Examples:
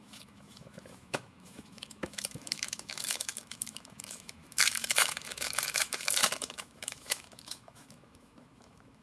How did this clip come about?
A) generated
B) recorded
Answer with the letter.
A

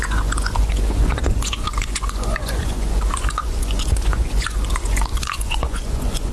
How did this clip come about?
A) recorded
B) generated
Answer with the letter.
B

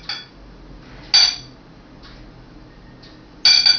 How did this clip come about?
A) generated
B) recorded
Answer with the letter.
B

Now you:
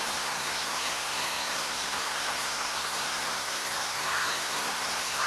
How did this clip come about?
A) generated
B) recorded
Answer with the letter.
A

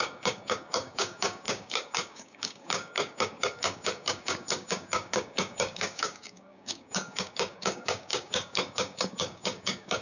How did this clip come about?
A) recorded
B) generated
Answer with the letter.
B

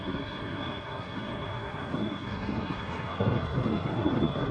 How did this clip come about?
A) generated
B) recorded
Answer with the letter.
A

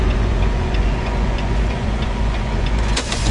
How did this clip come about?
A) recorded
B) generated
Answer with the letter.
B